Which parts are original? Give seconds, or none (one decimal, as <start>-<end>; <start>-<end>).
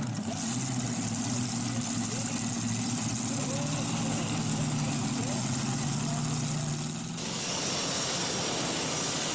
0.0-4.1; 4.9-7.2; 7.7-9.3